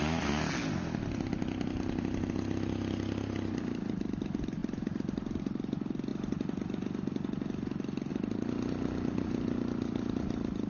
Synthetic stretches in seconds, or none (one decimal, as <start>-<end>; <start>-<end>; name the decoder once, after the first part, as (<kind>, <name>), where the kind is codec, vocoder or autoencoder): none